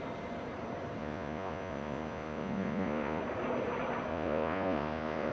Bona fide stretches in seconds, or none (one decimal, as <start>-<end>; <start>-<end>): 0.0-1.0; 3.2-4.1